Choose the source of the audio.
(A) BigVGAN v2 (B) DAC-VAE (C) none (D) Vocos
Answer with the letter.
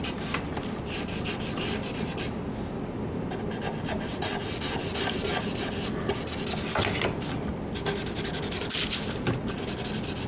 C